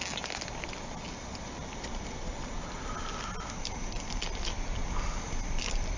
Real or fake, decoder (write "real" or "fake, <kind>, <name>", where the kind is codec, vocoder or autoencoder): real